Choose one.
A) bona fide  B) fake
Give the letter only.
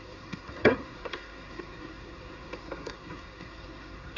B